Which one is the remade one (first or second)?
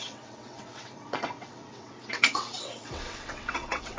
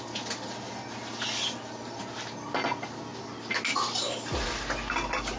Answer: first